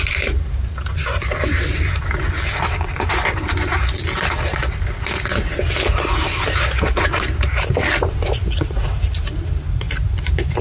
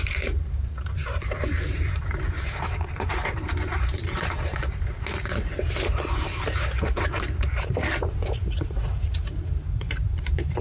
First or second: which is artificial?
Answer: second